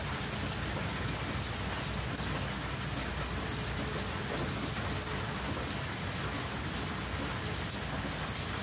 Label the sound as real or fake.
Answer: real